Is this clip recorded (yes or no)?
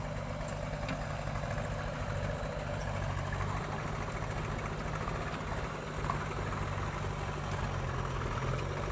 yes